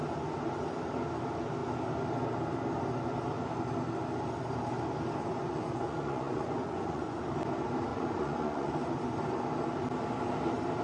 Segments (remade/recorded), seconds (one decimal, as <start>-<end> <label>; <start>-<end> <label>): 0.0-5.2 recorded; 5.2-7.2 remade; 7.2-7.9 recorded; 7.9-8.7 remade; 8.7-10.8 recorded